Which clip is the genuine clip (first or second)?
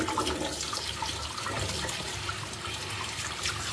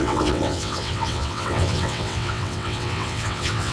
first